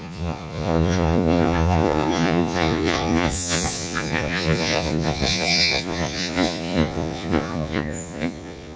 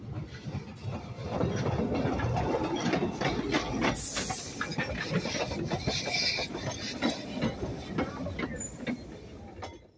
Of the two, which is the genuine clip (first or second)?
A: second